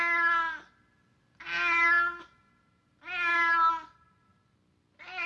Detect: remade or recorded recorded